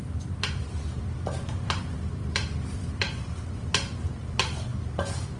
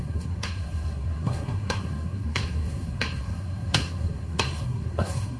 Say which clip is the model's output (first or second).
second